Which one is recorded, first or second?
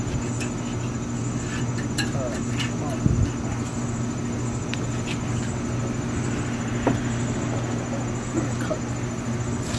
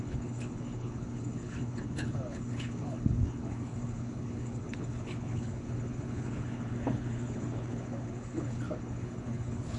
first